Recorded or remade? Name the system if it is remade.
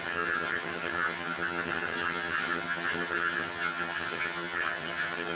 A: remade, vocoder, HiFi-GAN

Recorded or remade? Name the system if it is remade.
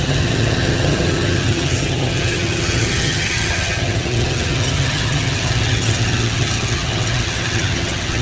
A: remade, vocoder, HiFi-GAN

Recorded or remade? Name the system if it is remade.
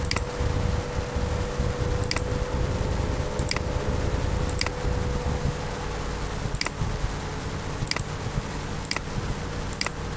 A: recorded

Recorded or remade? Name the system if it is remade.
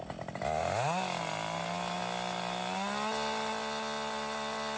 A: recorded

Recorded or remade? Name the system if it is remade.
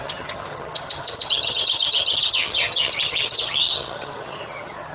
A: remade, vocoder, HiFi-GAN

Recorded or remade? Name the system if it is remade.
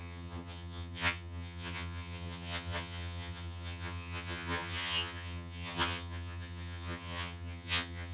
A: remade, vocoder, HiFi-GAN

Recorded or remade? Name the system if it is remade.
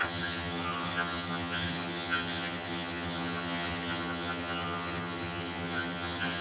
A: remade, vocoder, HiFi-GAN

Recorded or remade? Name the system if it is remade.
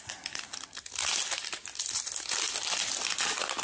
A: recorded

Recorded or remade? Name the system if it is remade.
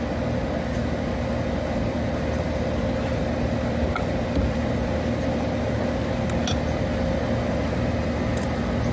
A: recorded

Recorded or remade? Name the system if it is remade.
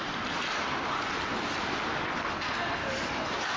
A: recorded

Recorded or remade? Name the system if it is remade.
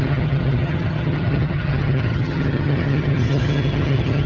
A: remade, vocoder, HiFi-GAN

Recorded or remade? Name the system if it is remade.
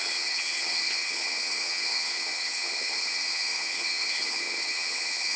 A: remade, vocoder, HiFi-GAN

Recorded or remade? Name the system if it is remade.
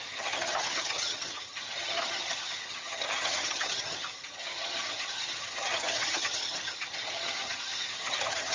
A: remade, vocoder, HiFi-GAN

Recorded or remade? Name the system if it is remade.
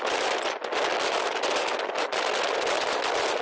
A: recorded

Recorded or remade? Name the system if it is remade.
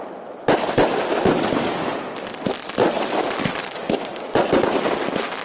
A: recorded